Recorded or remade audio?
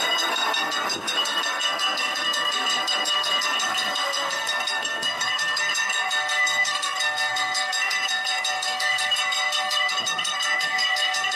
remade